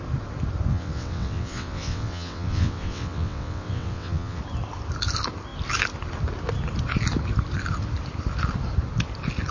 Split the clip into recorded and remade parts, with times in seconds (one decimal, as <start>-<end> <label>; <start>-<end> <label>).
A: 0.0-0.7 recorded; 0.7-4.4 remade; 4.4-9.5 recorded